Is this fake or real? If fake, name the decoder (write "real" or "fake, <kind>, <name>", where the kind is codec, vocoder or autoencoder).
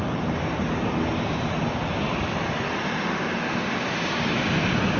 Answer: real